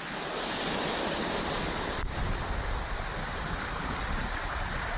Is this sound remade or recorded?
recorded